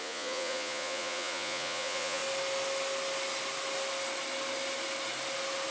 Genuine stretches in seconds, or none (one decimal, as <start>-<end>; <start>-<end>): 2.2-5.7